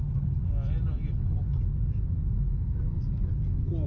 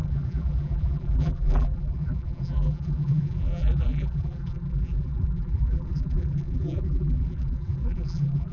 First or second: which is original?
first